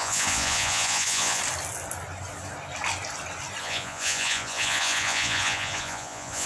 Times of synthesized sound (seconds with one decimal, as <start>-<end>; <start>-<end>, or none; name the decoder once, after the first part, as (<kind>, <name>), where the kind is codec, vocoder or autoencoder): 0.0-1.4 (vocoder, Vocos); 3.6-6.5

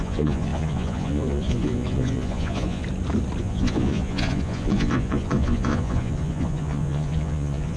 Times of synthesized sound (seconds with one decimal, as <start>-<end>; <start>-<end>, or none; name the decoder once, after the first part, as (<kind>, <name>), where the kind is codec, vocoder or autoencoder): 0.0-2.8 (vocoder, Vocos); 3.4-7.8

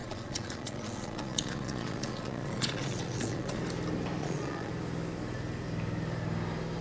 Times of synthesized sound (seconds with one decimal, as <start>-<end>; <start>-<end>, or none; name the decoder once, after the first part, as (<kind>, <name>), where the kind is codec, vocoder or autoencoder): 0.0-3.6 (vocoder, Vocos); 4.2-4.7

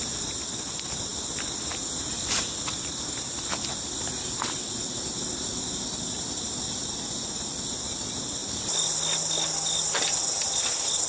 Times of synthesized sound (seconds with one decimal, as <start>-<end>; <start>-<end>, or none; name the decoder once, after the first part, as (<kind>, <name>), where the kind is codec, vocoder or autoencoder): none

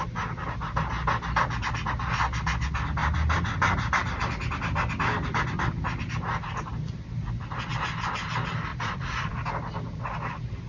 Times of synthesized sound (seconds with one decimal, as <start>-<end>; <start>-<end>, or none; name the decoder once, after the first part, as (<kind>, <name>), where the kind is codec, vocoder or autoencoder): 8.7-9.3 (vocoder, Vocos)

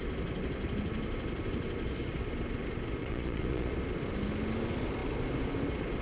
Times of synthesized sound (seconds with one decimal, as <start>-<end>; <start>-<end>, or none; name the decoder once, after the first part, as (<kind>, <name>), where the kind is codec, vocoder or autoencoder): 3.0-3.7 (vocoder, Vocos)

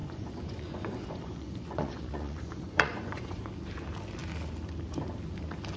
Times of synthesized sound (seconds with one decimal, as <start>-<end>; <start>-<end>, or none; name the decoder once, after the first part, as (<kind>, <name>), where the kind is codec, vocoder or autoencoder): 0.0-3.5 (vocoder, Vocos)